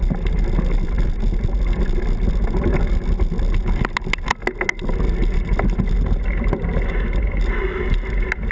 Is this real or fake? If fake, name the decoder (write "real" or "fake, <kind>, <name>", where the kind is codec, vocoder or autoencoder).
real